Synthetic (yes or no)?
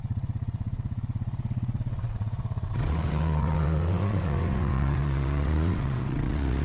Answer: yes